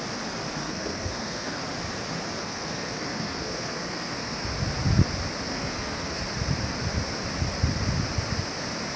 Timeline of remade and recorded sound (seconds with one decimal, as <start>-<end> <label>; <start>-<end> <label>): 0.0-0.6 recorded; 0.6-1.6 remade; 1.6-2.4 recorded; 2.4-4.4 remade; 4.4-5.5 recorded; 5.5-6.2 remade; 6.2-9.0 recorded